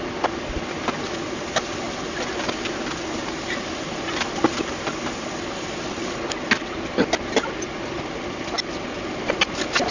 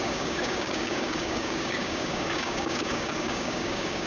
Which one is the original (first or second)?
first